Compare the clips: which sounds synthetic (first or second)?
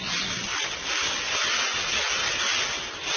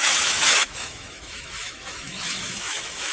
second